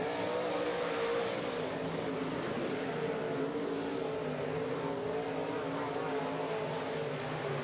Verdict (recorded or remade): recorded